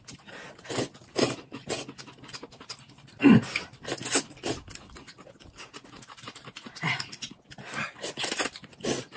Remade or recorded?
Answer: recorded